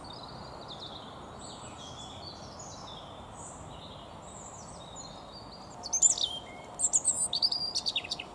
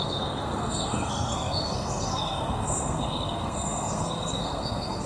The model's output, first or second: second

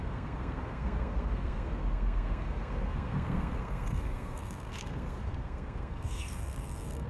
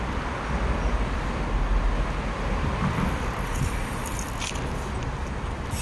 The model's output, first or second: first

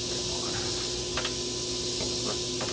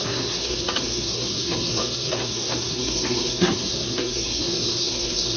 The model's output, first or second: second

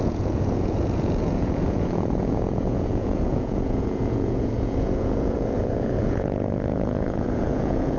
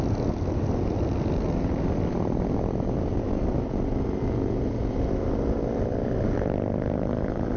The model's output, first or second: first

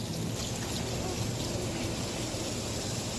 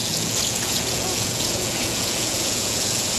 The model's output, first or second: second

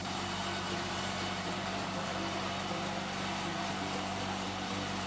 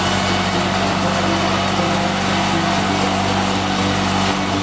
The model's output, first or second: first